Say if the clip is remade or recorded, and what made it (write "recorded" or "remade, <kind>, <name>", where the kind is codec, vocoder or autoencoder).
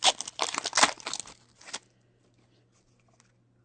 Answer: recorded